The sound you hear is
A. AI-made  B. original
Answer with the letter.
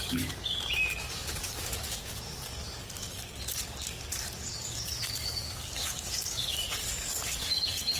A